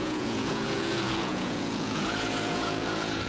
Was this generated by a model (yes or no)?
yes